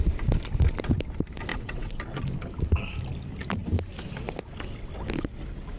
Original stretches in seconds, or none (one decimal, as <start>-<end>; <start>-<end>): 0.0-1.5; 2.0-5.8